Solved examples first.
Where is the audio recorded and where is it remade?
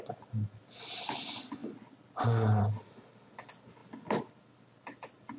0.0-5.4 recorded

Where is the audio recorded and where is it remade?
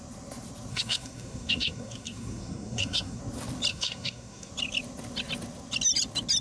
0.0-0.7 recorded; 0.7-3.2 remade; 3.2-3.7 recorded; 3.7-4.5 remade; 4.5-6.4 recorded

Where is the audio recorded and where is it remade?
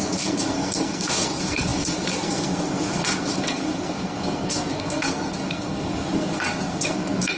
0.0-7.4 remade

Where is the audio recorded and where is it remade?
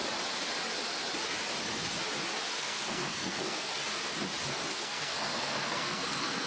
0.0-2.6 recorded; 2.6-3.7 remade; 3.7-4.7 recorded; 4.7-6.5 remade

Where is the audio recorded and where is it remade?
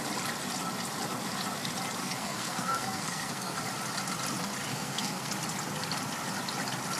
0.0-2.0 recorded; 2.0-3.6 remade; 3.6-4.7 recorded; 4.7-5.3 remade; 5.3-7.0 recorded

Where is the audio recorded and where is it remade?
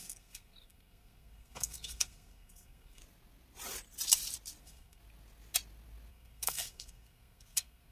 0.0-3.0 remade; 3.0-4.6 recorded; 4.6-5.0 remade; 5.0-6.1 recorded; 6.1-7.9 remade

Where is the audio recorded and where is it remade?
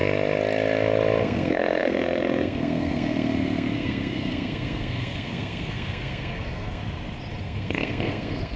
0.0-1.2 recorded; 1.2-6.8 remade; 6.8-7.4 recorded; 7.4-8.6 remade